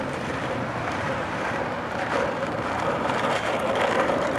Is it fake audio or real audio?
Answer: fake